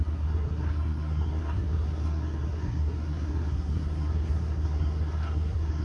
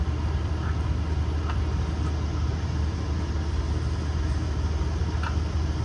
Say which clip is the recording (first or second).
second